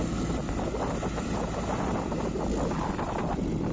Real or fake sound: real